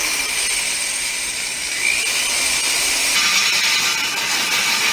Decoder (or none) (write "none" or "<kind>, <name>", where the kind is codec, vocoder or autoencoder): none